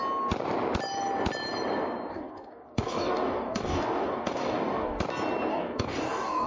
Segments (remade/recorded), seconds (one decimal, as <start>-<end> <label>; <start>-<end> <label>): 0.0-2.1 recorded; 2.1-5.0 remade; 5.0-5.5 recorded; 5.5-6.5 remade